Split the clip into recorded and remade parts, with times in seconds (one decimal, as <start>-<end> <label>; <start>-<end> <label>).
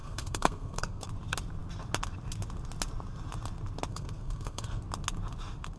0.0-1.1 remade; 1.1-3.9 recorded; 3.9-4.8 remade; 4.8-5.8 recorded